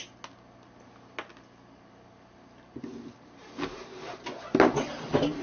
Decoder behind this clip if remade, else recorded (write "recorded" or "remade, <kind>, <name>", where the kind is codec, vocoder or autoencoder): recorded